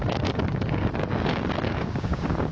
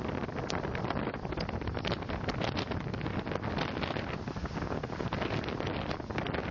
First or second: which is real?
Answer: second